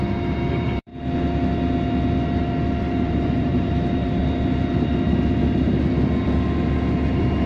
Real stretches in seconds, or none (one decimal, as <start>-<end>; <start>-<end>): 0.9-2.8; 4.2-7.1